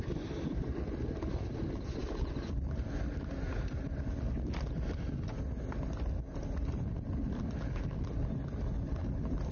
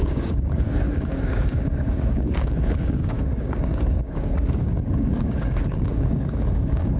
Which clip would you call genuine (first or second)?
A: first